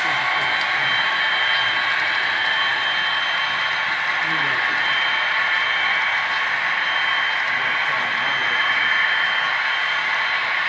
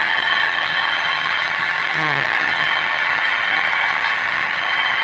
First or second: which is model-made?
second